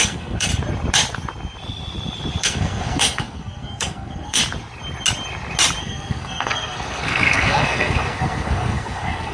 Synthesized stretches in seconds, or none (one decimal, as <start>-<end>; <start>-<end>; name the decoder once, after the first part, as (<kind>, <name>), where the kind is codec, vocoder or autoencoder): 0.0-0.5 (codec, SNAC); 2.4-4.4; 5.8-9.3